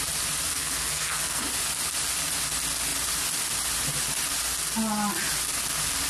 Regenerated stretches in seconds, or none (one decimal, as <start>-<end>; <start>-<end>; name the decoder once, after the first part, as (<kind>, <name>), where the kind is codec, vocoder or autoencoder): 0.5-1.5 (codec, SNAC)

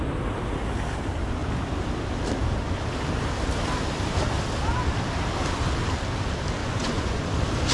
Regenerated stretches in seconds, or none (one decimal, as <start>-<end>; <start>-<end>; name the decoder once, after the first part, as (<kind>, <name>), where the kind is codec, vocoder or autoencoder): 6.6-7.3 (vocoder, Vocos)

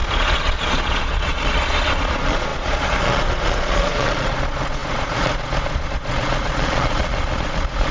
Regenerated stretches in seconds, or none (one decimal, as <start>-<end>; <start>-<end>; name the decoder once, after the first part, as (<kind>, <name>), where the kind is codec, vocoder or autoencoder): 0.0-7.9 (vocoder, Vocos)

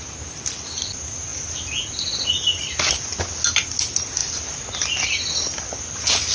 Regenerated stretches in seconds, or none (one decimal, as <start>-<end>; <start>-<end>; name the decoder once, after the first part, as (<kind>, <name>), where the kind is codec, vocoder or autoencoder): none

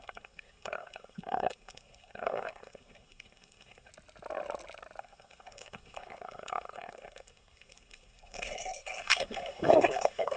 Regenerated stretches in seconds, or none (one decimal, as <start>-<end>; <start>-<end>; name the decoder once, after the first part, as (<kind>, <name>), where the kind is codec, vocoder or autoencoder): 0.0-3.9 (codec, SNAC); 5.0-10.4

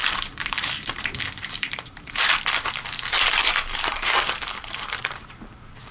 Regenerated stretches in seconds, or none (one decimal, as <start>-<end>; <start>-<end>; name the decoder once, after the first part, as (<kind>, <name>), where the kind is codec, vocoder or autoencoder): 0.0-2.3 (vocoder, BigVGAN v2); 3.4-5.9

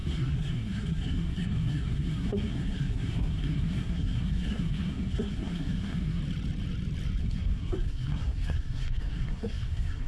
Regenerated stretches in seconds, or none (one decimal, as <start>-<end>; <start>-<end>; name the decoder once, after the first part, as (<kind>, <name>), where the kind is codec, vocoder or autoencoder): 0.0-6.2 (codec, SNAC); 7.2-10.1

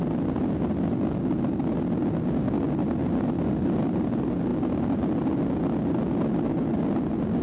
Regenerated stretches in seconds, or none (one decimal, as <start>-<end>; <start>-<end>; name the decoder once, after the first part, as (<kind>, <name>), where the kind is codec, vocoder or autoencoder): 3.0-4.0 (vocoder, BigVGAN v2)